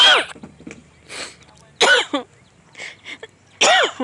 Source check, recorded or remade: recorded